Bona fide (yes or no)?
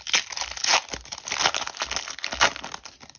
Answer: yes